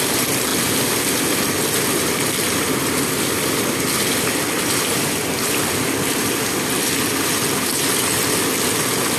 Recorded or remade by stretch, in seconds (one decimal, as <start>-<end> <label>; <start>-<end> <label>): 0.0-9.2 recorded